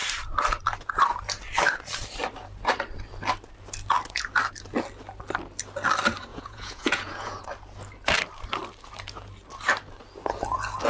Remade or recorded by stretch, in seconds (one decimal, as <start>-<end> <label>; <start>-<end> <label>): 0.0-6.3 recorded; 6.3-7.4 remade; 7.4-10.9 recorded